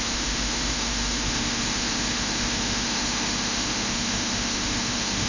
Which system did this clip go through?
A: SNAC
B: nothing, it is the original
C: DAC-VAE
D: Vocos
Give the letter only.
C